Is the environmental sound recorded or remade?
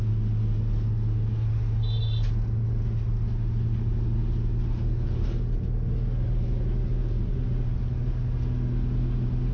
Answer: recorded